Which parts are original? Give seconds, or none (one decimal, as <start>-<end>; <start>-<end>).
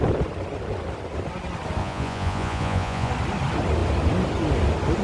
0.0-1.8; 3.1-5.0